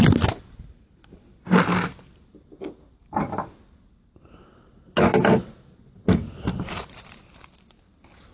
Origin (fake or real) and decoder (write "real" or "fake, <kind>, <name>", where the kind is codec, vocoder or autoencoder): real